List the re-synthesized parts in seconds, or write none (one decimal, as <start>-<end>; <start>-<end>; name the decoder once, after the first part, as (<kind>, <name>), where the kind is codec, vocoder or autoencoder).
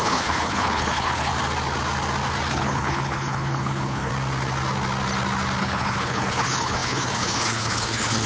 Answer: 0.0-1.3 (codec, HILCodec); 2.5-4.1; 5.6-8.3